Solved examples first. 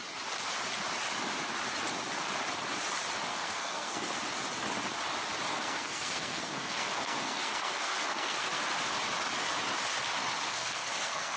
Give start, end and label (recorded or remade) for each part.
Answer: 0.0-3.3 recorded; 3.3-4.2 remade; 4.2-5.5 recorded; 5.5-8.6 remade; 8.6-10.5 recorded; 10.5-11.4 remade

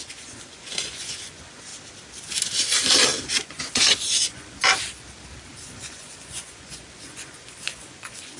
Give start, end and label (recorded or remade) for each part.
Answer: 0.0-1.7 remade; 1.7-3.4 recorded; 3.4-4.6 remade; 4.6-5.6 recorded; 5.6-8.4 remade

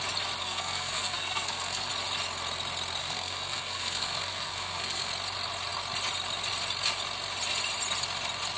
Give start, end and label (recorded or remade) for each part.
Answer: 0.0-0.4 recorded; 0.4-1.9 remade; 1.9-3.0 recorded; 3.0-5.1 remade; 5.1-8.6 recorded

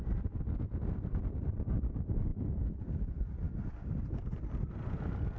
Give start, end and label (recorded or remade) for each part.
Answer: 0.0-5.4 recorded

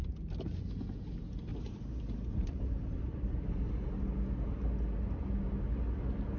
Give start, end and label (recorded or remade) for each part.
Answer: 0.0-1.5 recorded; 1.5-3.7 remade; 3.7-6.4 recorded